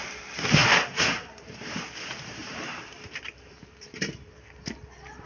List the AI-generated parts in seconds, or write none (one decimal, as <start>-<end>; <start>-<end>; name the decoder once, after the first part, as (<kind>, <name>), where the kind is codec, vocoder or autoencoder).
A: 0.6-1.8 (vocoder, BigVGAN v2); 2.4-4.3

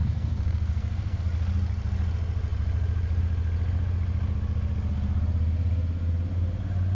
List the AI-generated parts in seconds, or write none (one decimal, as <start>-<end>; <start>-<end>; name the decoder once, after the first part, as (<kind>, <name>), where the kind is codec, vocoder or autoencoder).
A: 0.0-1.2 (codec, SNAC)

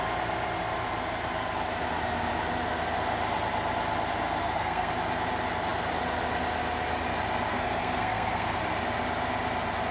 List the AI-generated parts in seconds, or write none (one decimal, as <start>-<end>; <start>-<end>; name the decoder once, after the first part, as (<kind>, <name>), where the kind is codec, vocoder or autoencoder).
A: 4.4-4.9 (codec, SNAC); 7.5-8.6

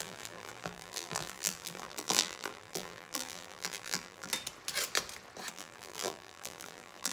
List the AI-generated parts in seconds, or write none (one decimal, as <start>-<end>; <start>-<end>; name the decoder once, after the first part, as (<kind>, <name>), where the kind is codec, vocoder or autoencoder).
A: 0.0-4.3 (vocoder, BigVGAN v2); 5.5-7.1